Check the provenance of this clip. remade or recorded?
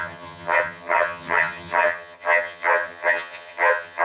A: remade